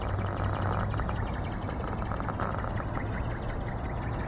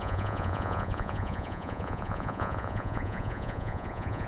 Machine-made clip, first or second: second